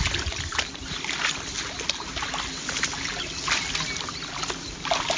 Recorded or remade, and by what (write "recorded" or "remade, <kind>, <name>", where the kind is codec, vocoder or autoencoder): recorded